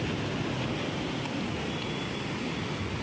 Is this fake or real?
real